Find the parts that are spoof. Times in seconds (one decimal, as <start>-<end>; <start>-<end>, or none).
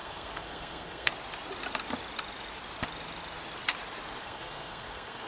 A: 0.0-1.1; 4.2-5.3